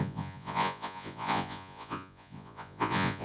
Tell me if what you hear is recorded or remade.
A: remade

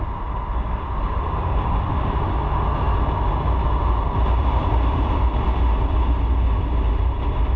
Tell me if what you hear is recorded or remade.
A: recorded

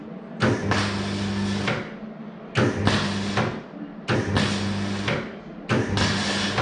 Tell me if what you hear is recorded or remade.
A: recorded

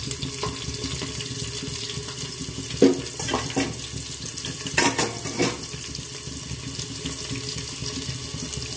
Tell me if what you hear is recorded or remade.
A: recorded